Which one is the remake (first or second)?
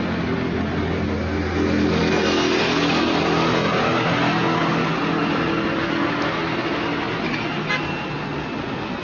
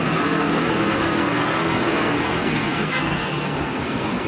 second